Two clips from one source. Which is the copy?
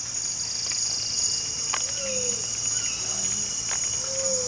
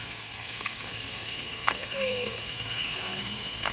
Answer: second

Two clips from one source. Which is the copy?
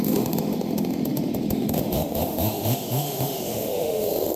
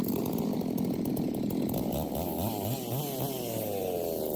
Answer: first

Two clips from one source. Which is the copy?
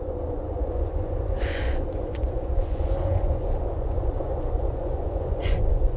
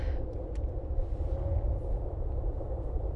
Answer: first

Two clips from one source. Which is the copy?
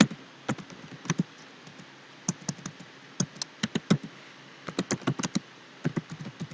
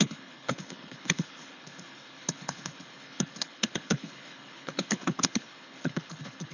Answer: second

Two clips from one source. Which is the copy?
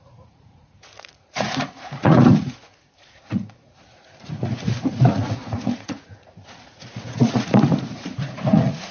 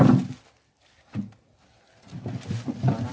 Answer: first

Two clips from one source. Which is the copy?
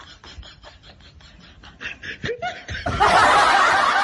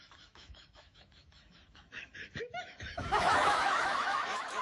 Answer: second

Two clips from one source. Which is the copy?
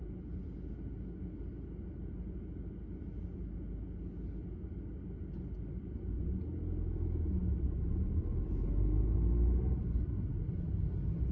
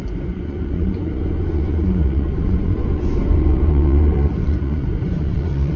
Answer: second